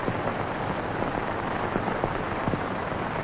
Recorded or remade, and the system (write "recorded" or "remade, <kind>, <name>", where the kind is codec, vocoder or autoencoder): recorded